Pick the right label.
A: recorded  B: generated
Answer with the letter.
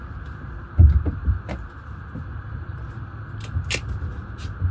A